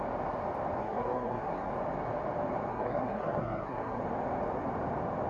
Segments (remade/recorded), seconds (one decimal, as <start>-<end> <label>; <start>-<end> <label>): 0.0-0.8 recorded; 0.8-1.7 remade; 1.7-2.7 recorded; 2.7-4.0 remade; 4.0-5.3 recorded